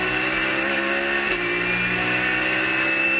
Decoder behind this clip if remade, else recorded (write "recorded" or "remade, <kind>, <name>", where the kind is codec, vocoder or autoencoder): recorded